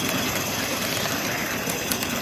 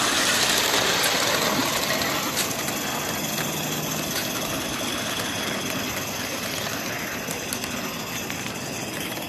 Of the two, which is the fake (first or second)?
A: first